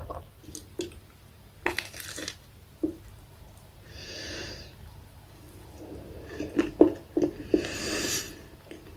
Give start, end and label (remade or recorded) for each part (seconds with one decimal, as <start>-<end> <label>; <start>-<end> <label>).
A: 0.0-2.2 recorded; 2.2-4.6 remade; 4.6-9.0 recorded